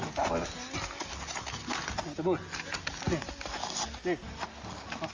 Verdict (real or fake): real